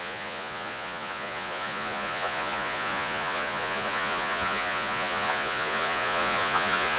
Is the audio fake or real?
fake